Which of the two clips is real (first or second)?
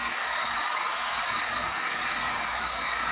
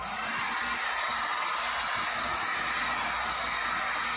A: second